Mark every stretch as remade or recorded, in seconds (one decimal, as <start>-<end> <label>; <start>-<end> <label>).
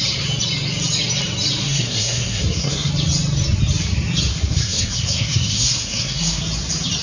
0.0-1.6 recorded; 1.6-2.9 remade; 2.9-4.3 recorded; 4.3-6.4 remade; 6.4-7.0 recorded